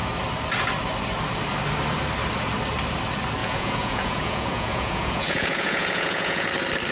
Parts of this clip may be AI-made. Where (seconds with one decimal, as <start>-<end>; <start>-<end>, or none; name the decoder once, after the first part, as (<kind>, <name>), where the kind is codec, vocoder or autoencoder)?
3.4-6.5 (vocoder, Vocos)